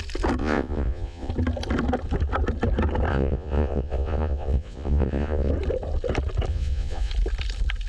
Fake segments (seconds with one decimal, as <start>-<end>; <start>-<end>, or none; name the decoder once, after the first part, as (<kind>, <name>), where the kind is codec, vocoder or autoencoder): 0.4-1.3 (vocoder, Vocos); 3.1-5.5; 6.5-7.1